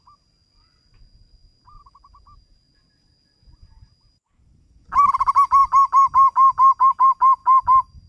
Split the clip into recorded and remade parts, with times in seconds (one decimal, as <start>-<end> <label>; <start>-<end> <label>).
0.0-8.1 recorded